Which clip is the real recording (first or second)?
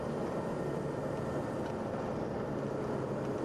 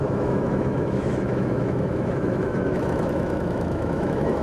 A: first